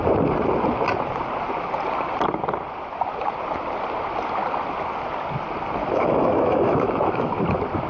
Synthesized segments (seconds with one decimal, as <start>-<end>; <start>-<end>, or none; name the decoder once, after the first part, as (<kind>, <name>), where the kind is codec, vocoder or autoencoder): 5.8-7.4 (autoencoder, DAC-VAE)